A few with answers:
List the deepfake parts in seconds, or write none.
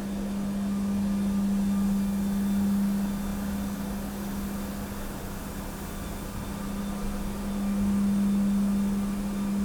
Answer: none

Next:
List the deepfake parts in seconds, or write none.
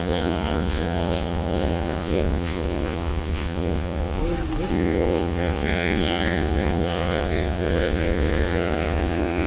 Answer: 0.0-4.2 (vocoder, Vocos); 4.7-9.5